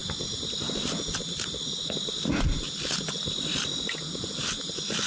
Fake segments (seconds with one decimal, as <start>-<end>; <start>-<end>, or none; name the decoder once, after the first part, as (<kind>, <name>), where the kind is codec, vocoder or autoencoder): none